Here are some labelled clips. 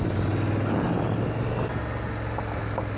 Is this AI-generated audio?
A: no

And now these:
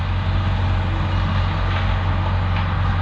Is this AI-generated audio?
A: no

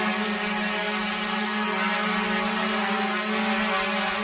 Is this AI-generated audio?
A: no